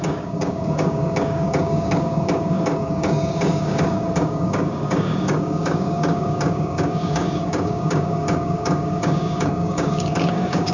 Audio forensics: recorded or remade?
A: remade